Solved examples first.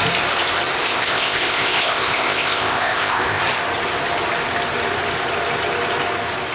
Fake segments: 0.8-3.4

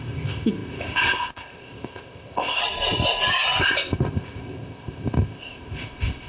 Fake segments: 0.0-2.6; 3.6-6.3

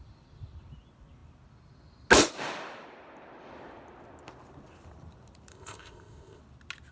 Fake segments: 5.5-6.4

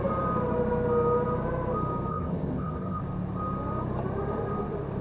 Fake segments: 2.1-3.0